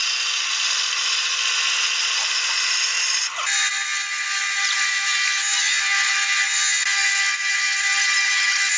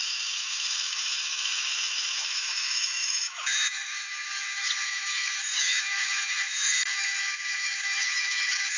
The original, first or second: first